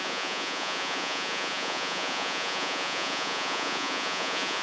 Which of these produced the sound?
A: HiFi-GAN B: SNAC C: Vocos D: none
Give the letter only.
C